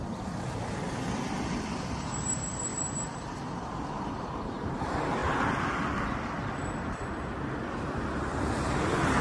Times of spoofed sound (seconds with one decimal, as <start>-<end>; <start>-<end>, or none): 2.7-4.8